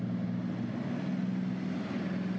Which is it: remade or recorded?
recorded